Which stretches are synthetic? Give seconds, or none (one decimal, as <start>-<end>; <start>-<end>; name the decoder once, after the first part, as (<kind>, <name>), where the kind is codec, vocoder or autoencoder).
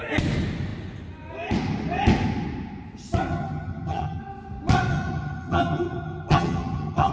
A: 3.3-4.2 (vocoder, HiFi-GAN); 4.9-7.1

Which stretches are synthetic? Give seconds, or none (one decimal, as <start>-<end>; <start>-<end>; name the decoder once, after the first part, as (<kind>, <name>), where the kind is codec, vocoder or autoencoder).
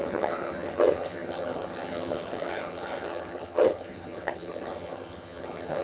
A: 0.0-5.8 (vocoder, HiFi-GAN)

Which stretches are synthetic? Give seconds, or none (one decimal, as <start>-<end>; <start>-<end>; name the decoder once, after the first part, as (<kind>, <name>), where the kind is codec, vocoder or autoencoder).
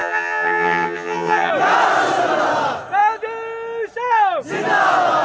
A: 0.0-1.5 (vocoder, HiFi-GAN)